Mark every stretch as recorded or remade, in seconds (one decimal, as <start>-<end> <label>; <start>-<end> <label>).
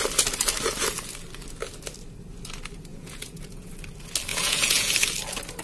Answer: 0.0-2.9 recorded; 2.9-3.7 remade; 3.7-4.3 recorded; 4.3-4.9 remade; 4.9-5.6 recorded